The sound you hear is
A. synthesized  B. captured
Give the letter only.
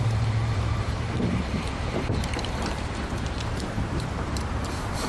A